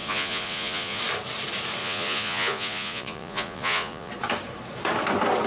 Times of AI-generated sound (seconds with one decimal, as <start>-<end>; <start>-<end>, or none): 0.0-1.0; 1.8-4.1